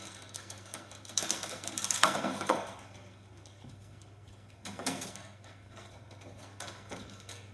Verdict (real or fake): fake